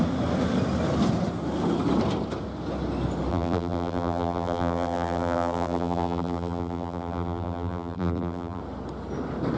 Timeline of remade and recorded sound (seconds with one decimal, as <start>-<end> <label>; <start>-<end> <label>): 0.0-3.3 recorded; 3.3-8.6 remade; 8.6-9.6 recorded